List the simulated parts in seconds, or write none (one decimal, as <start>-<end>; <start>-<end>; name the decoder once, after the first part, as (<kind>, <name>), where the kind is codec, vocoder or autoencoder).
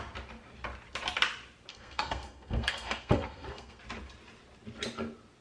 1.7-3.8 (codec, SNAC)